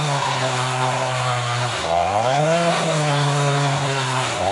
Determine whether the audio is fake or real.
fake